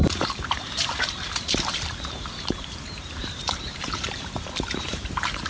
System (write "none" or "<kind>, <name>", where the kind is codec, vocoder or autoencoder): vocoder, BigVGAN v2